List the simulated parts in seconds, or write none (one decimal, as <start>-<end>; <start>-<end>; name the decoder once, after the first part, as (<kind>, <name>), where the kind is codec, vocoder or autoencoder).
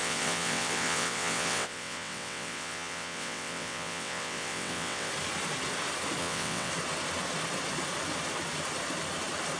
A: 0.0-5.1 (vocoder, WaveNeXt); 6.2-6.7